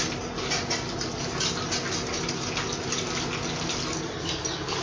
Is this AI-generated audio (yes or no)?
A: no